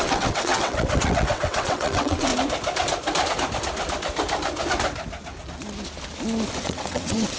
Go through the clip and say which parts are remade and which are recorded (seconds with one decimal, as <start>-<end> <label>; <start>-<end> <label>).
0.0-2.3 remade; 2.3-6.5 recorded; 6.5-7.4 remade